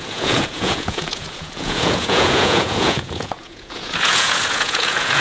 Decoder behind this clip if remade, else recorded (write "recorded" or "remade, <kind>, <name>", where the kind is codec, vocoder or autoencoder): remade, vocoder, Vocos